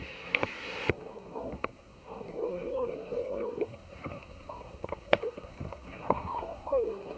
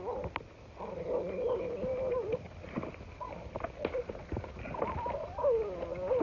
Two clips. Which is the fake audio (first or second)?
first